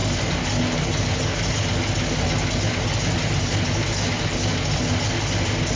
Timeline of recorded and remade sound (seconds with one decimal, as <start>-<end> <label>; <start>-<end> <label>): 0.0-5.8 recorded